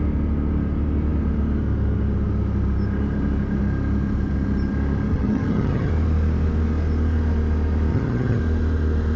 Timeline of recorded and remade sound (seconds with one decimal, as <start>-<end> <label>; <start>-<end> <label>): 0.0-5.1 recorded; 5.1-5.9 remade; 5.9-7.9 recorded; 7.9-8.4 remade; 8.4-9.2 recorded